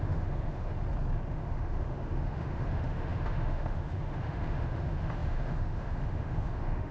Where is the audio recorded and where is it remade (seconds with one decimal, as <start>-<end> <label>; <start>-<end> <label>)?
0.0-0.7 remade; 0.7-1.3 recorded; 1.3-6.9 remade